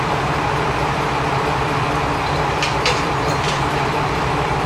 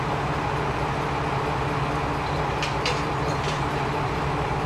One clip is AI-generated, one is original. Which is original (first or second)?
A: second